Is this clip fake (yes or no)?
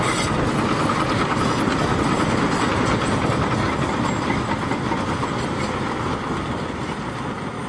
no